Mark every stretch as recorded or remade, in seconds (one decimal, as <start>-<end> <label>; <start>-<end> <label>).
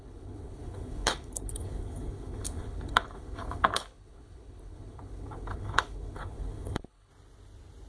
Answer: 0.0-7.1 remade; 7.1-7.9 recorded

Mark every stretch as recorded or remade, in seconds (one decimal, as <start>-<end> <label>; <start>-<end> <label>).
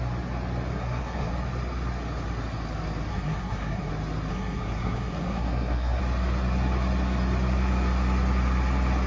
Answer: 0.0-0.7 recorded; 0.7-1.3 remade; 1.3-3.1 recorded; 3.1-3.9 remade; 3.9-4.3 recorded; 4.3-6.0 remade; 6.0-9.1 recorded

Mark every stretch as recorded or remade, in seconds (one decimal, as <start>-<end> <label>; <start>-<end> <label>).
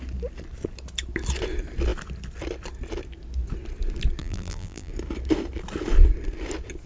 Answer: 0.0-4.2 recorded; 4.2-4.9 remade; 4.9-6.9 recorded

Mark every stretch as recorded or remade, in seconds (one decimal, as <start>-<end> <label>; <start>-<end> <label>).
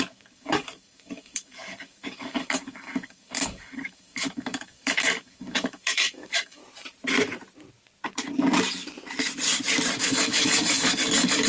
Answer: 0.0-6.6 remade; 6.6-10.0 recorded; 10.0-11.5 remade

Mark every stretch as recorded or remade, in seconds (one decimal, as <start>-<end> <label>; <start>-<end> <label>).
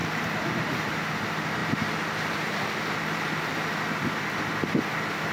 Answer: 0.0-1.6 recorded; 1.6-3.3 remade; 3.3-5.3 recorded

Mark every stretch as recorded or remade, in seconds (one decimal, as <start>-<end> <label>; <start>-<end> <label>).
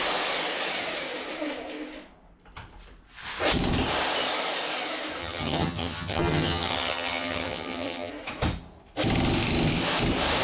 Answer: 0.0-5.2 recorded; 5.2-8.1 remade; 8.1-10.4 recorded